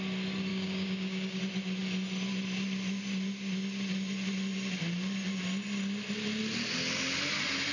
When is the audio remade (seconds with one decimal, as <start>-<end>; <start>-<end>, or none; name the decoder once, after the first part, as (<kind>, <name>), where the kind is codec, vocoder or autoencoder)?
0.5-1.4 (codec, DAC)